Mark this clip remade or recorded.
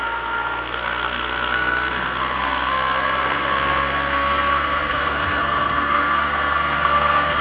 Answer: remade